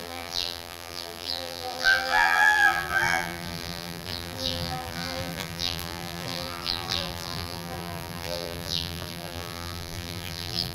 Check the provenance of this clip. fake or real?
fake